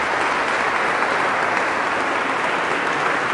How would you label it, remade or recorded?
recorded